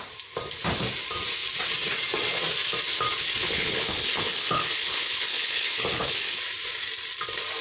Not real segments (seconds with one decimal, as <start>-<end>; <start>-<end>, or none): 3.4-6.4